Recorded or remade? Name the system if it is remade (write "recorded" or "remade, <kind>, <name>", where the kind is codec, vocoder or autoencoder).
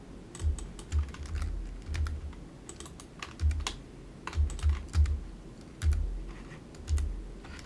recorded